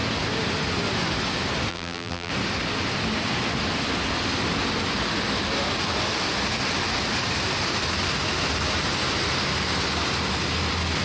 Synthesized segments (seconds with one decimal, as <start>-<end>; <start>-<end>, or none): 1.7-2.3